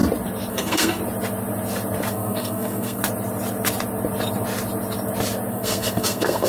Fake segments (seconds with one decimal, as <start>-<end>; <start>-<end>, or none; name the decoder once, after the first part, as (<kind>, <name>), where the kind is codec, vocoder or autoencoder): 0.5-1.0 (codec, SNAC); 2.1-3.0; 5.5-6.5